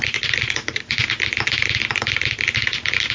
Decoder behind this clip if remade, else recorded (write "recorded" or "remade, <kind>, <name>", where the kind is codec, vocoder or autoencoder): recorded